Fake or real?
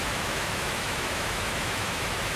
fake